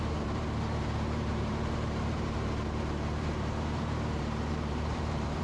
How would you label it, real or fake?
fake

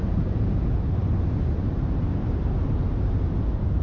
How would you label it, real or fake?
fake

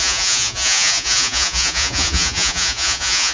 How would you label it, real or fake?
fake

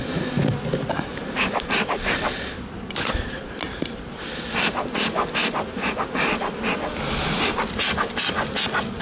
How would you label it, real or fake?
real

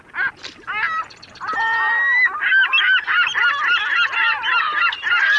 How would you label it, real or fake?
real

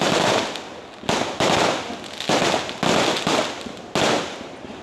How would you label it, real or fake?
real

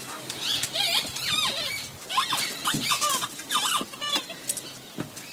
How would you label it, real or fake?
real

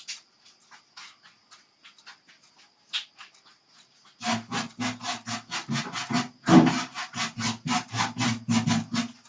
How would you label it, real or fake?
real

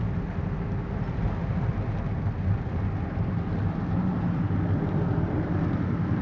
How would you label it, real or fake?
real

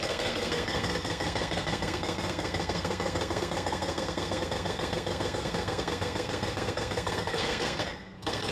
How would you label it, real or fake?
fake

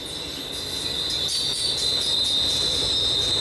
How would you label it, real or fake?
real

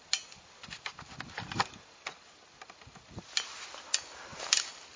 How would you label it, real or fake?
real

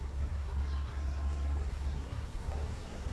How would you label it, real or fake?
fake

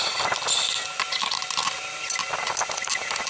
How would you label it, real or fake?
real